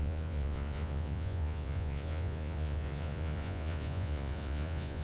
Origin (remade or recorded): remade